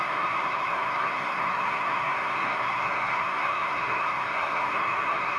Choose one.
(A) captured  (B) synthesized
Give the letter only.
B